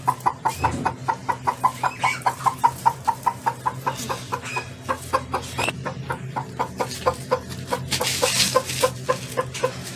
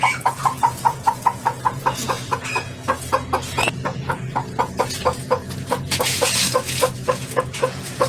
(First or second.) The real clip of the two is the first